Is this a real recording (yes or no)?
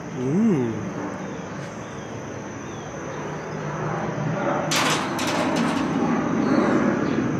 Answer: yes